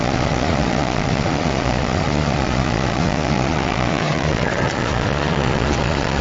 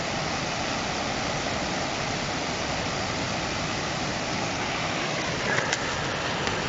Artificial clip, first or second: first